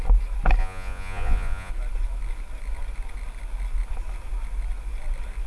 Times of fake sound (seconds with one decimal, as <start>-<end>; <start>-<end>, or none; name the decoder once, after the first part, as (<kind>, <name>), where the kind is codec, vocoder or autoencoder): 0.6-1.7 (vocoder, Vocos)